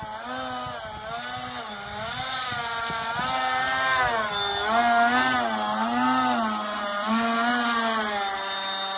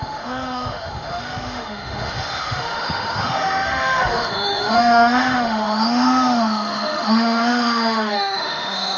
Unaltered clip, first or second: first